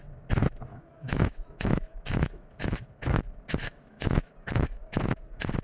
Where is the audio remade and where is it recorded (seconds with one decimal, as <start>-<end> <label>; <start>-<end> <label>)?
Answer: 0.0-0.7 recorded; 0.7-2.9 remade; 2.9-3.6 recorded; 3.6-4.3 remade; 4.3-5.6 recorded